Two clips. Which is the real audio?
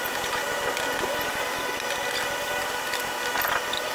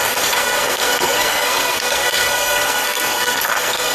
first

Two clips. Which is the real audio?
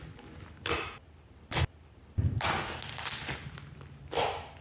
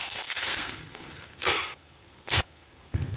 first